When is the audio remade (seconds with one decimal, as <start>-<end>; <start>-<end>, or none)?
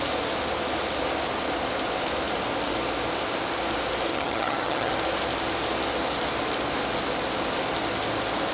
4.1-4.9